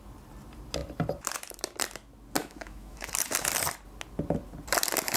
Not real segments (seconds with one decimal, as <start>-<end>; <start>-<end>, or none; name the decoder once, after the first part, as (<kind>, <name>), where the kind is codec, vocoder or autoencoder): 2.4-3.1 (autoencoder, DAC-VAE)